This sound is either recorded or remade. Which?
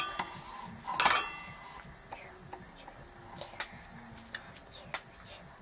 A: recorded